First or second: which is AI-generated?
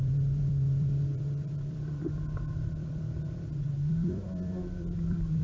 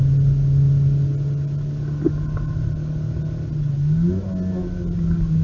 first